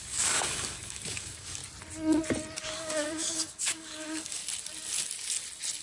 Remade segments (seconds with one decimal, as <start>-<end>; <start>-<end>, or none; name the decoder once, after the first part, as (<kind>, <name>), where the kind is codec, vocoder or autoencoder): 0.0-1.6 (codec, DAC); 2.6-4.4